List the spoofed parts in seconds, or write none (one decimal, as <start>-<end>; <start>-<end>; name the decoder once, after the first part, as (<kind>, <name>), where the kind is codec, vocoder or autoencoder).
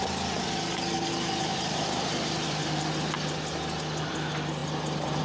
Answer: 1.5-2.9 (vocoder, BigVGAN v2)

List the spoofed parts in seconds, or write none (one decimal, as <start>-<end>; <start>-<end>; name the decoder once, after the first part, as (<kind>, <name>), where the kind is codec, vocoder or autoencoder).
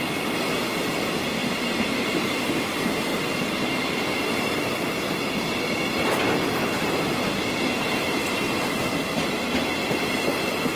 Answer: 1.4-2.4 (vocoder, BigVGAN v2)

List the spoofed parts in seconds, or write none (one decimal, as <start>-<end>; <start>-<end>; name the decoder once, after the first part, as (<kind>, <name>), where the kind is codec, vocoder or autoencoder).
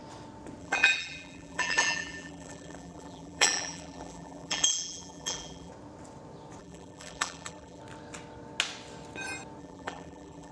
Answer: 0.6-5.7 (vocoder, BigVGAN v2); 6.6-7.8; 9.6-10.5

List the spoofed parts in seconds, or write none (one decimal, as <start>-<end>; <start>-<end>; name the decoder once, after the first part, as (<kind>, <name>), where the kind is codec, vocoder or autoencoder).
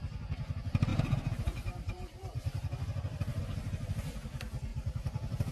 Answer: 0.9-3.4 (vocoder, BigVGAN v2); 4.7-5.5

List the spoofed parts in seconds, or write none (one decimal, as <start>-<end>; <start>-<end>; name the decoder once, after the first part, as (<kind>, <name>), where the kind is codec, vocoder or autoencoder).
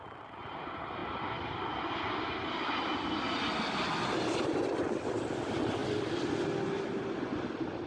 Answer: none